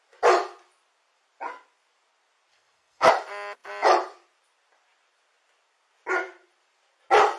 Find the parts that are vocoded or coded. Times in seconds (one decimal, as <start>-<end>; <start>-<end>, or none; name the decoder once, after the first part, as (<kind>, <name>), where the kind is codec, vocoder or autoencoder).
2.5-3.1 (codec, SNAC)

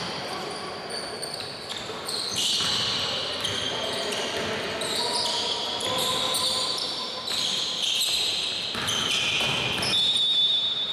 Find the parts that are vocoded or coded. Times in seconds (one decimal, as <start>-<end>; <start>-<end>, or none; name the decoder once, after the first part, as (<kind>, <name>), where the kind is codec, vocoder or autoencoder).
none

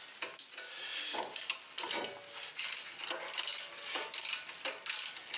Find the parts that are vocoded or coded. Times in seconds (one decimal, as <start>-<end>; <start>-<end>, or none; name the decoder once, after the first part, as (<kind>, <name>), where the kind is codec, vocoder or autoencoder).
none

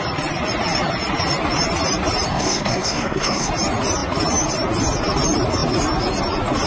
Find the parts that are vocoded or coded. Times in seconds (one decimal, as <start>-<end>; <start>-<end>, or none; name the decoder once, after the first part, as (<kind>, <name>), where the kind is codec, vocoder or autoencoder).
2.3-3.5 (codec, SNAC)

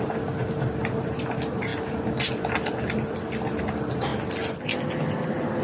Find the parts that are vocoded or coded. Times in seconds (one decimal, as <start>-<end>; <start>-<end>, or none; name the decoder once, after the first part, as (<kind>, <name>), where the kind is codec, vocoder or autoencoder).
0.0-1.7 (vocoder, BigVGAN v2); 3.6-4.1; 5.0-5.6

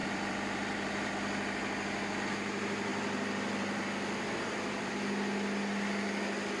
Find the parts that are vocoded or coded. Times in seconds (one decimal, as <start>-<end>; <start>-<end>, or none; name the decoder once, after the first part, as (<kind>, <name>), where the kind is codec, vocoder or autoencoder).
0.0-1.1 (vocoder, BigVGAN v2); 2.9-4.9